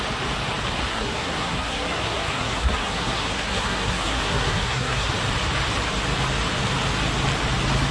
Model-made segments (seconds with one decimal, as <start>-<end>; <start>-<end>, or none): 0.9-5.1